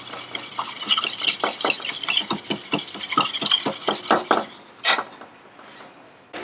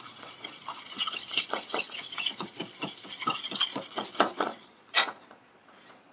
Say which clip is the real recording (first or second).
first